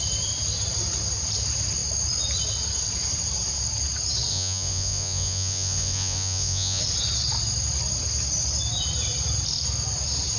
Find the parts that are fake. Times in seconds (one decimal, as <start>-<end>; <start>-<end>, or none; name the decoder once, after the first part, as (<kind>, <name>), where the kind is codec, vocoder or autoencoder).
4.3-6.8 (vocoder, Vocos)